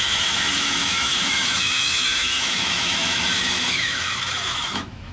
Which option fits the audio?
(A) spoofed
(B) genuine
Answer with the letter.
A